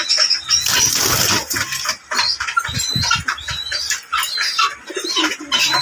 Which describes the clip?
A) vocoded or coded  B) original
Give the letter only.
B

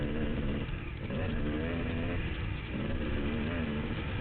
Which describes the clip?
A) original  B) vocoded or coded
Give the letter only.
B